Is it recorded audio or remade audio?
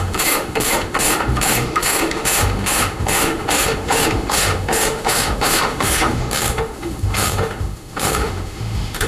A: remade